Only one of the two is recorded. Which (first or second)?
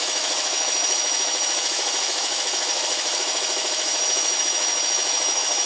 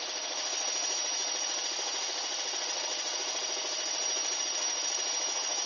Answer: second